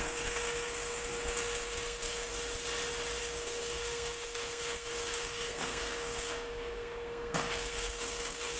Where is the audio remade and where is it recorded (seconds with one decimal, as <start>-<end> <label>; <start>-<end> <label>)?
0.0-2.3 remade; 2.3-3.2 recorded; 3.2-8.6 remade